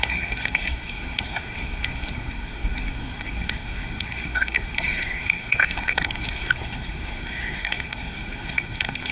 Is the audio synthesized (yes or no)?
yes